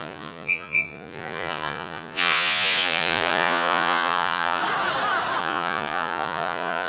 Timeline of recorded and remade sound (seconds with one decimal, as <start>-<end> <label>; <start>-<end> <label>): 0.0-4.6 remade; 4.6-5.4 recorded; 5.4-6.9 remade